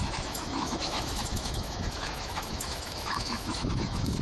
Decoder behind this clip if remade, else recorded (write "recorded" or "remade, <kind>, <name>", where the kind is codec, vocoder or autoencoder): remade, autoencoder, DAC-VAE